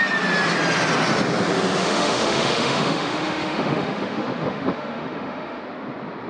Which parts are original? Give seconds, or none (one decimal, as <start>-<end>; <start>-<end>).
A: 0.0-1.8; 5.6-6.3